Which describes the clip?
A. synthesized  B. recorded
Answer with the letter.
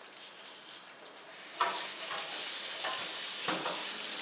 B